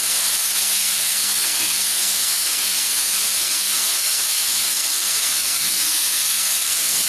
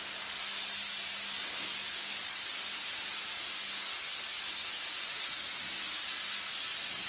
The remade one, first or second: first